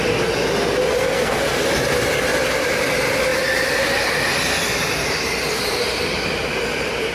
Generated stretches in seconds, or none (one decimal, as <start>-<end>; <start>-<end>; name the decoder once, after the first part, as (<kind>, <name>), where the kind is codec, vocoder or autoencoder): 0.9-1.4 (codec, SNAC)